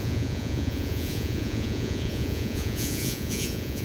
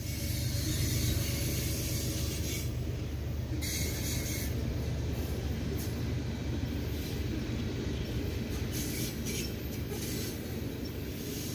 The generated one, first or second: first